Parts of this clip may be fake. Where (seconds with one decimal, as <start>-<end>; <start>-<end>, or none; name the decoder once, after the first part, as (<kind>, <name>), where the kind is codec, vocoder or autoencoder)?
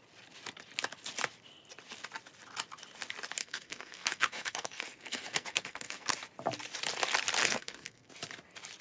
3.4-6.1 (codec, SNAC); 7.4-8.1